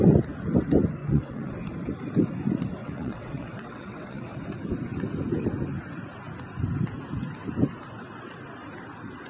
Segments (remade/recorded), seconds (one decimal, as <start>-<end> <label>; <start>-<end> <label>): 0.0-1.0 recorded; 1.0-1.5 remade; 1.5-2.8 recorded; 2.8-4.4 remade; 4.4-9.3 recorded